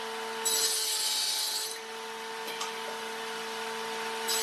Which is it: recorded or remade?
recorded